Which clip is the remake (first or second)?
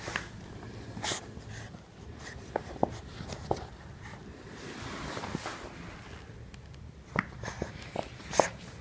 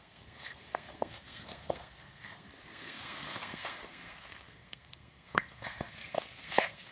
second